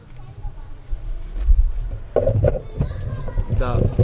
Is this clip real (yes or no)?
yes